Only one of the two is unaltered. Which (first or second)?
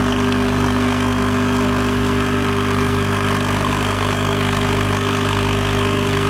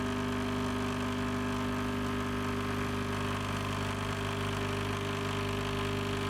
second